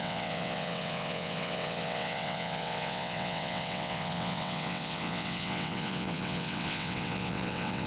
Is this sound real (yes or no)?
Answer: no